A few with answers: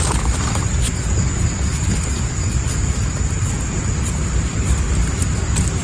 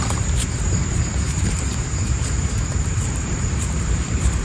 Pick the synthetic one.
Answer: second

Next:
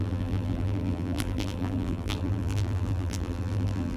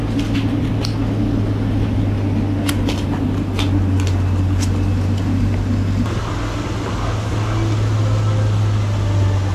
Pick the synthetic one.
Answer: first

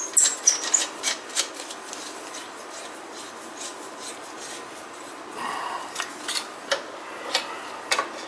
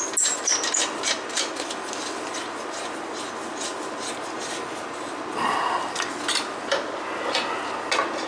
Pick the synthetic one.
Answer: first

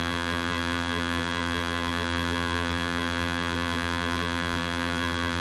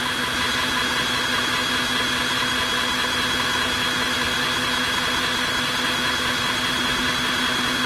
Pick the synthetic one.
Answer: first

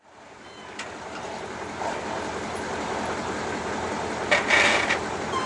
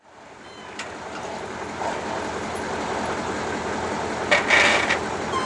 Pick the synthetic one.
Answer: first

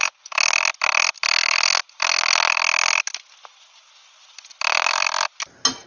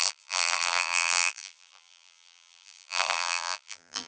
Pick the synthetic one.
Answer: second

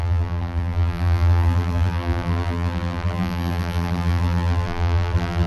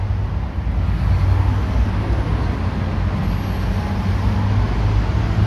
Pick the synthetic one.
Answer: first